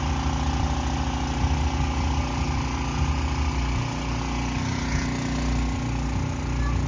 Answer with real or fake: real